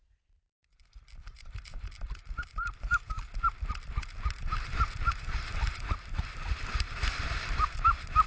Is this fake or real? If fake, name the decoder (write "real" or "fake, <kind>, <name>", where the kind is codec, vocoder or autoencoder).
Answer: fake, vocoder, BigVGAN v2